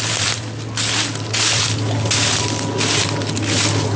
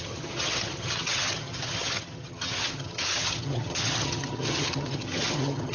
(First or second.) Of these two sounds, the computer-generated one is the second